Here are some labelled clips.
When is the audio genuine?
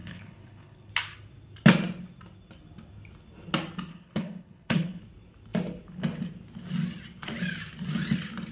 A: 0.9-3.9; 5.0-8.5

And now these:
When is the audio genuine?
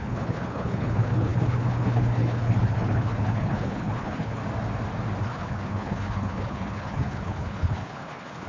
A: 4.4-5.2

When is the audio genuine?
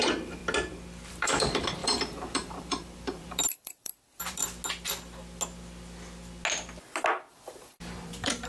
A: 0.4-1.1; 4.4-7.3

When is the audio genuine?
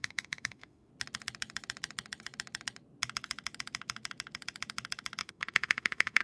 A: 0.9-5.2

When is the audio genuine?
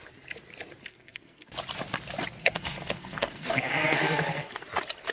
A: 0.0-0.9; 1.5-2.4; 4.6-5.1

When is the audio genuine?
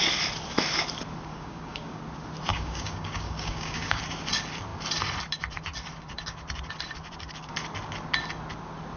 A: 0.0-1.3; 2.0-2.5; 4.0-9.0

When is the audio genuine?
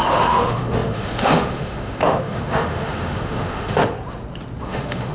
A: 3.8-4.6